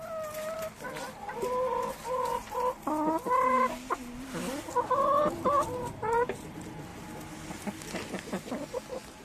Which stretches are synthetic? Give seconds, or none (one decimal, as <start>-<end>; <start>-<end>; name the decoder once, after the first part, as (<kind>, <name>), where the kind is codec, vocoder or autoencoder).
none